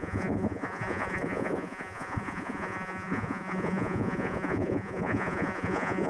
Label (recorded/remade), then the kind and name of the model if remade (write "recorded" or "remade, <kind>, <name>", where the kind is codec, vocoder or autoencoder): remade, vocoder, Vocos